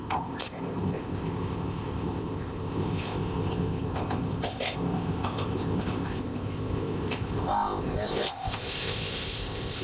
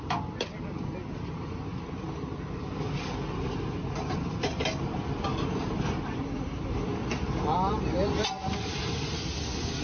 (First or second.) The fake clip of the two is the first